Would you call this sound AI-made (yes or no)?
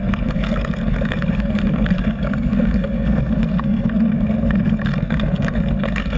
yes